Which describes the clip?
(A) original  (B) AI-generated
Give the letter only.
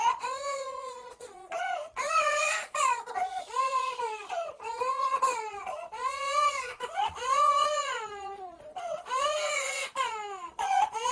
B